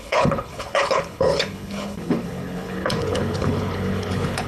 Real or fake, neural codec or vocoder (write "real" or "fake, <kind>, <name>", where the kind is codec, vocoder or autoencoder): fake, codec, HILCodec